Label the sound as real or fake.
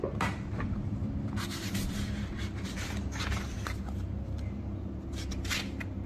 fake